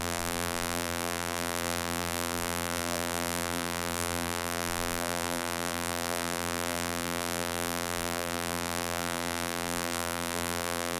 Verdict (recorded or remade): remade